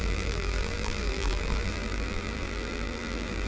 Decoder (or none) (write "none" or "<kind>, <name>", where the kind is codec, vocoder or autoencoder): vocoder, BigVGAN v2